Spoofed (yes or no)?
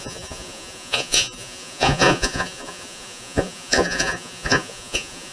yes